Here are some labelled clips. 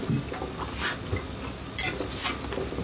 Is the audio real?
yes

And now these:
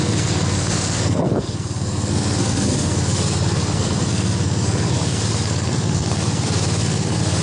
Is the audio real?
no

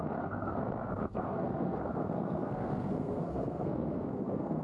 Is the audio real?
no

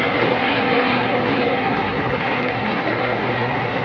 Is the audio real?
no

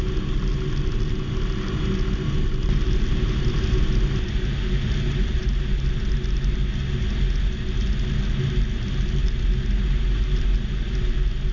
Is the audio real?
yes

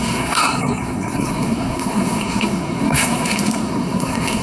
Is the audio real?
no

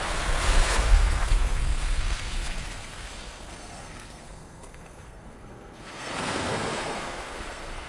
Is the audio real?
no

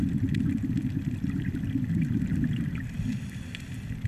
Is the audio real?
yes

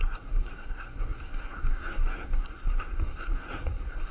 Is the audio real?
no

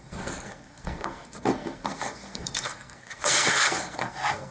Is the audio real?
no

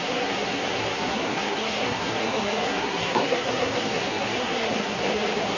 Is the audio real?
no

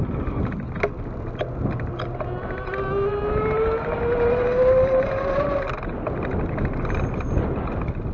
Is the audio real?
yes